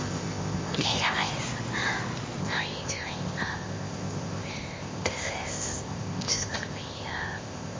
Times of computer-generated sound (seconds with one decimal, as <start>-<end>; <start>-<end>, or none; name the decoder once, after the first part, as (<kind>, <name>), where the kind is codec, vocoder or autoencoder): 0.0-1.3 (codec, ZipCodec); 2.4-7.8